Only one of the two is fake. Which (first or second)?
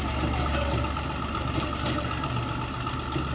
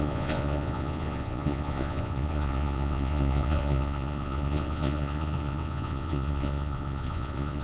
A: second